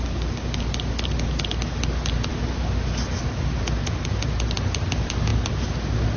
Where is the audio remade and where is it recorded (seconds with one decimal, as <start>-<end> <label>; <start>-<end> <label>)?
0.0-6.2 recorded